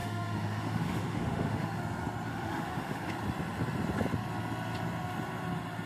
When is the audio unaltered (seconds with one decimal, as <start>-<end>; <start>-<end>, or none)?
1.8-2.3; 3.1-5.9